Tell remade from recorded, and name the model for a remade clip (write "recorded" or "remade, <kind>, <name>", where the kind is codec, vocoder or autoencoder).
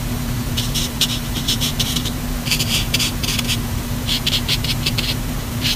remade, vocoder, BigVGAN v2